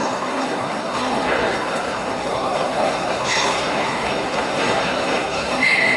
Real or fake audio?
fake